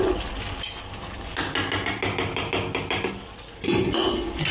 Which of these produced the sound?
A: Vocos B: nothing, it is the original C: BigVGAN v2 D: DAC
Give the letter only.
B